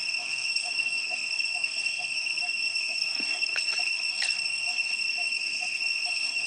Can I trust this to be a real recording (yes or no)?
no